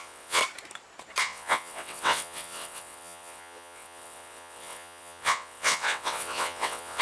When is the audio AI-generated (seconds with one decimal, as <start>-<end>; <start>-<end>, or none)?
0.0-0.4; 1.2-7.0